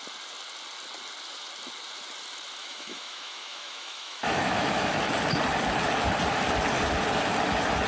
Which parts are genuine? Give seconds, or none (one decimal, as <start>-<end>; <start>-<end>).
0.0-2.6; 5.0-7.9